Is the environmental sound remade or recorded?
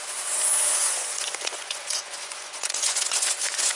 remade